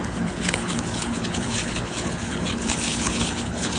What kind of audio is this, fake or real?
fake